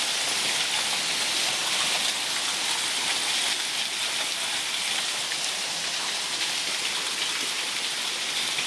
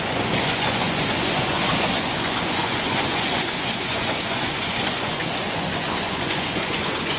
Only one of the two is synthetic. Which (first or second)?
second